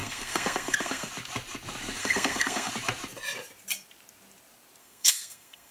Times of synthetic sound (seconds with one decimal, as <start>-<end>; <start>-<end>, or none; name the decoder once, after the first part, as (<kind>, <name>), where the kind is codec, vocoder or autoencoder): 0.0-1.1 (codec, SNAC); 2.0-2.7; 4.8-5.7